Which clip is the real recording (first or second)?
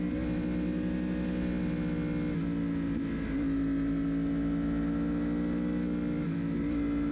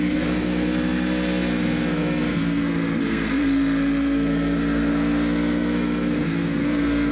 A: first